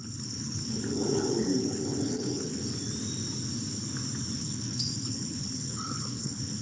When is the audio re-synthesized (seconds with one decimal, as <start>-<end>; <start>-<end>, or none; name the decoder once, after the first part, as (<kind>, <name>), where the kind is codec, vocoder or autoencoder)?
0.0-2.6 (codec, HILCodec); 4.4-6.6